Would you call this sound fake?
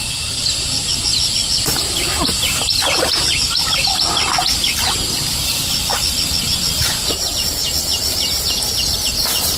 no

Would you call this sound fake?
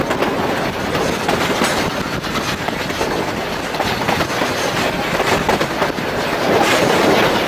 no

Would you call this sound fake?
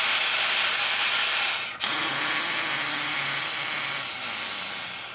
no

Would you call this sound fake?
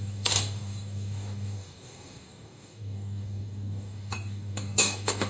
yes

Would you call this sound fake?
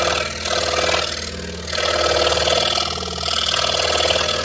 no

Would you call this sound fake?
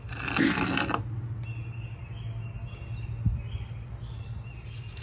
no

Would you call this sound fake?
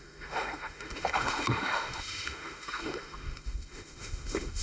yes